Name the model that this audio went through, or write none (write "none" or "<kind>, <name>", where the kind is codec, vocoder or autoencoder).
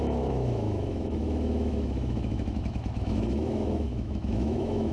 autoencoder, DAC-VAE